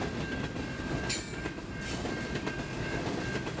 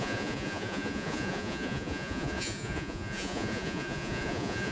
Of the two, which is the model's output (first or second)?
second